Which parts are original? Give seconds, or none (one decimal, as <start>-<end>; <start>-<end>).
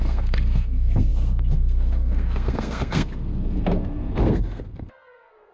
none